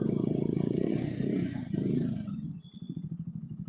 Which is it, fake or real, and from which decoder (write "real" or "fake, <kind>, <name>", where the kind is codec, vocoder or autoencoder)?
fake, vocoder, Vocos